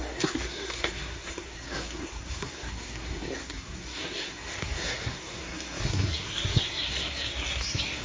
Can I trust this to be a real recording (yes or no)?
no